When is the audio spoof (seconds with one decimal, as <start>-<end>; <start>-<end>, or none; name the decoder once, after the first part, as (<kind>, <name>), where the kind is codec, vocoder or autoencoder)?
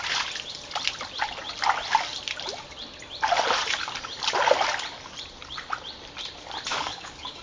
6.7-7.4 (codec, DAC)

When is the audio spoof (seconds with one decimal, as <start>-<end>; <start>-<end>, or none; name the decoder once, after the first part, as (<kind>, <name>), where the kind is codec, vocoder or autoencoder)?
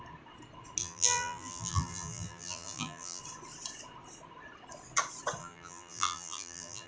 0.8-3.2 (vocoder, BigVGAN v2); 5.4-6.9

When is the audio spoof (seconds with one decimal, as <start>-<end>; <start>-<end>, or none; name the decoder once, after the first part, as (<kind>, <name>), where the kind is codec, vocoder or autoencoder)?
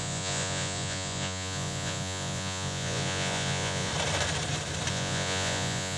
0.0-3.9 (vocoder, Vocos); 4.9-6.0